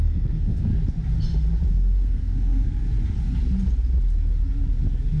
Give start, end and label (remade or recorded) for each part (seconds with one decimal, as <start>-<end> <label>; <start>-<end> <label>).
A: 0.0-0.7 remade; 0.7-1.7 recorded; 1.7-2.8 remade; 2.8-5.2 recorded